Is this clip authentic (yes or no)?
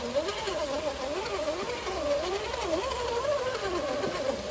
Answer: yes